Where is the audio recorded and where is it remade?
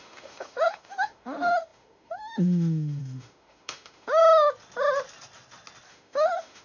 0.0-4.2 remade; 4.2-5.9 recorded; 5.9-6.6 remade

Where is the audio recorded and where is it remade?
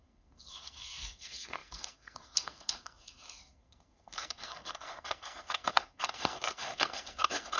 0.0-7.6 remade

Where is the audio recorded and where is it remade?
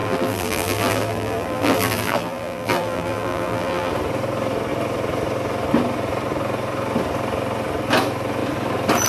0.0-3.9 remade; 3.9-9.1 recorded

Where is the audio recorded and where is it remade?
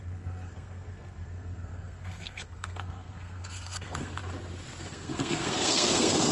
0.0-4.2 remade; 4.2-4.8 recorded; 4.8-6.3 remade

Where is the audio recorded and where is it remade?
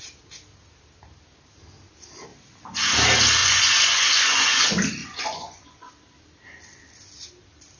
0.0-3.4 recorded; 3.4-4.6 remade; 4.6-5.0 recorded; 5.0-5.9 remade; 5.9-7.8 recorded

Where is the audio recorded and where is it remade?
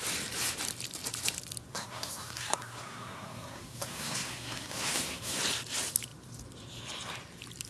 0.0-1.7 recorded; 1.7-5.4 remade; 5.4-7.7 recorded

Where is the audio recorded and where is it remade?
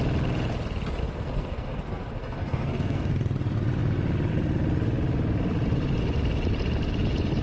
0.0-1.0 recorded; 1.0-3.1 remade; 3.1-7.4 recorded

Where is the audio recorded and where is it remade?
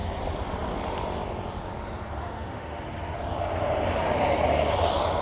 0.0-2.2 recorded; 2.2-2.8 remade; 2.8-5.2 recorded